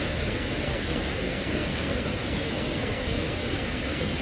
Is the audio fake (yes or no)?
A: yes